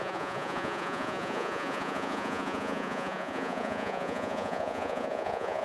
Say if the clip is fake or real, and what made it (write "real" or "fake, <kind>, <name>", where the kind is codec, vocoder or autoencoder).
fake, vocoder, Vocos